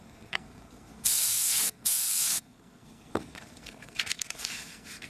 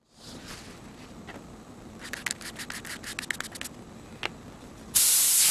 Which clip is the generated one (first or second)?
first